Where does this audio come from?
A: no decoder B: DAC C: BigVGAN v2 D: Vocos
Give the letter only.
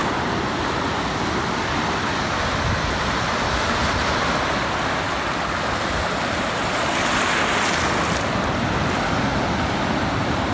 A